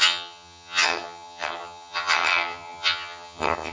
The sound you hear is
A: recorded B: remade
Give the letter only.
B